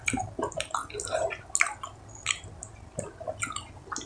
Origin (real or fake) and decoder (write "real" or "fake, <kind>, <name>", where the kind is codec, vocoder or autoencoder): real